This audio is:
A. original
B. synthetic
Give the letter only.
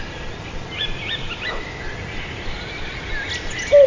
A